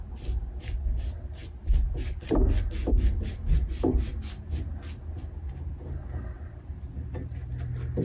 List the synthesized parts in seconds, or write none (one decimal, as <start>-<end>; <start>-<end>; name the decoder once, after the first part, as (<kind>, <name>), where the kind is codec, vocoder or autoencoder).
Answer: none